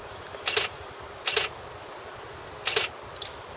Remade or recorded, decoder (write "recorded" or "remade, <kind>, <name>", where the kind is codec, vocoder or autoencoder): recorded